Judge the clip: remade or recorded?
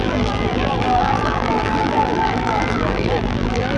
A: remade